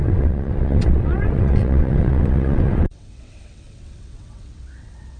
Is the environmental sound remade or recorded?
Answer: remade